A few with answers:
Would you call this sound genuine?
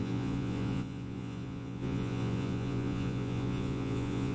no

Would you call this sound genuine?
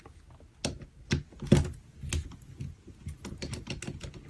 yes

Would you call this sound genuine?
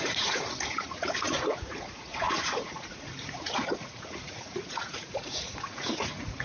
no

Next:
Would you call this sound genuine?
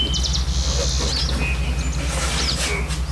yes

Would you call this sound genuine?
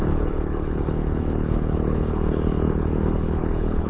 no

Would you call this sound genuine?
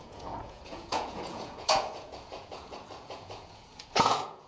no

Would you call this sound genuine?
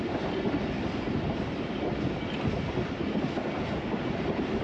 yes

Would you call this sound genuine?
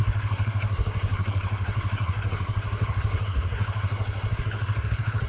no